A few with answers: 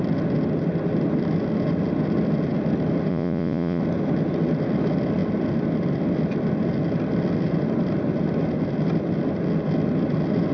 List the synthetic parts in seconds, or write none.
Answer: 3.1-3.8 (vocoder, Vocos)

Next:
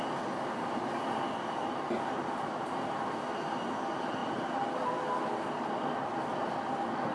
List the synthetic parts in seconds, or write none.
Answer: none

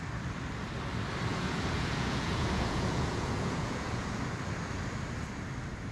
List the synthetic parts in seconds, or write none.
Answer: 1.3-4.2 (vocoder, Vocos)

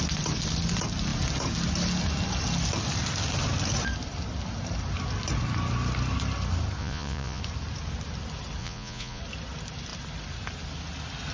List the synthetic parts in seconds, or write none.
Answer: 6.8-7.4 (vocoder, Vocos); 8.6-9.2

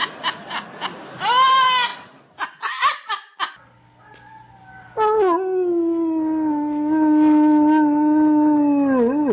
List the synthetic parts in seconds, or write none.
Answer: none

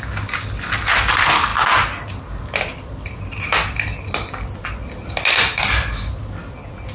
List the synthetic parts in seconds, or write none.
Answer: none